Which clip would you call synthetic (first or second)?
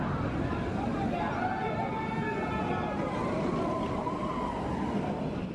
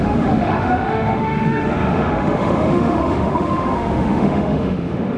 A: second